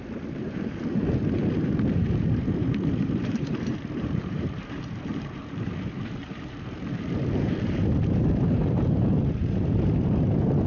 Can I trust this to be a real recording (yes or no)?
no